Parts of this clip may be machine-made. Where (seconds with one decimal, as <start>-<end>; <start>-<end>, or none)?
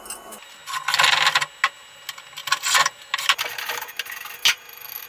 none